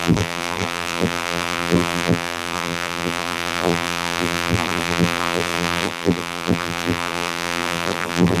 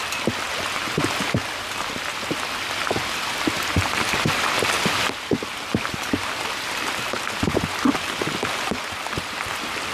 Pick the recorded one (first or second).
second